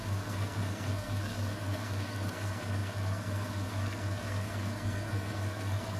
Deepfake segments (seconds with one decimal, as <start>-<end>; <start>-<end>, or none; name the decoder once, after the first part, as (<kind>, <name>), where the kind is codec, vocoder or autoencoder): 0.0-6.0 (codec, SNAC)